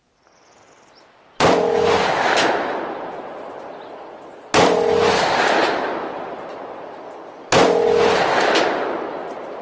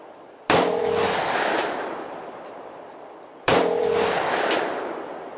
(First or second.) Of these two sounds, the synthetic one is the second